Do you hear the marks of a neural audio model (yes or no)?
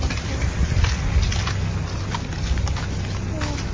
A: no